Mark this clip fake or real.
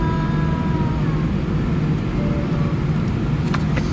real